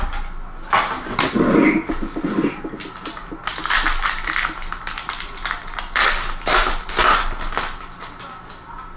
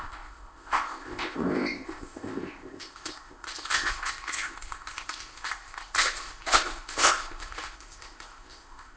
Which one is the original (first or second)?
first